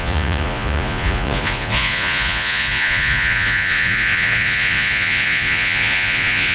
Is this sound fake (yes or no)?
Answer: yes